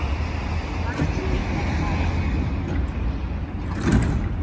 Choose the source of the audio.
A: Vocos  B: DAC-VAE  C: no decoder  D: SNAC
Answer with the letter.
C